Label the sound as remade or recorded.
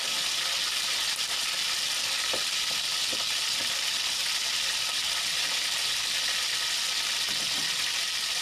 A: recorded